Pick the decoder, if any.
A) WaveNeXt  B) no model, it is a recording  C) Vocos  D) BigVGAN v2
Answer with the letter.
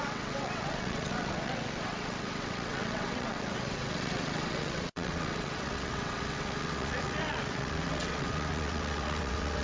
A